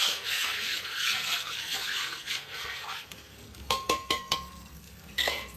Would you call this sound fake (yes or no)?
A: yes